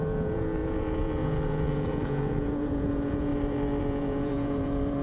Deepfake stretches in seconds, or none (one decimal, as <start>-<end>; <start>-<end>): 0.0-3.3; 3.8-5.0

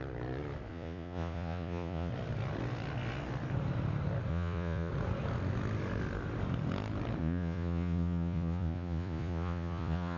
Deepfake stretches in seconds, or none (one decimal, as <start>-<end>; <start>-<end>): 0.7-2.1; 4.3-4.9; 7.2-10.2